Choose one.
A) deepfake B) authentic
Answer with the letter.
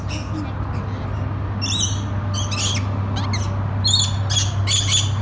B